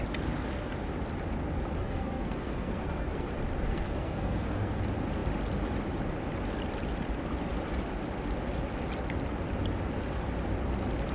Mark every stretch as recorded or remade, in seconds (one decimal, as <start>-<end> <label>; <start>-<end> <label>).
0.0-1.8 recorded; 1.8-3.3 remade; 3.3-3.7 recorded; 3.7-4.8 remade; 4.8-11.1 recorded